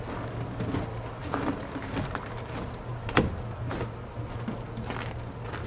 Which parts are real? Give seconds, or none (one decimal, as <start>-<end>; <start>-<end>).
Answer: 0.0-1.2; 3.2-5.7